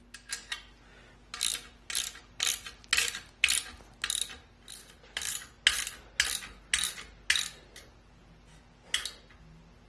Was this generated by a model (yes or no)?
no